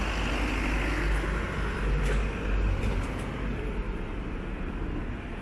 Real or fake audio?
real